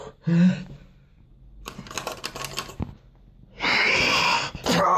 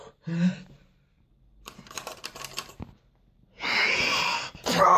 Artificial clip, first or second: second